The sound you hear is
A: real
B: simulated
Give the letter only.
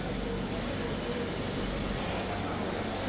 A